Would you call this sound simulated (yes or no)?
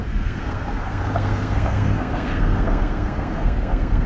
yes